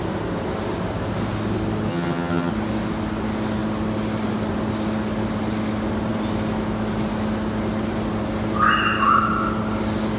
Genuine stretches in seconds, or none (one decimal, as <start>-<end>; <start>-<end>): 0.0-1.9; 2.5-10.2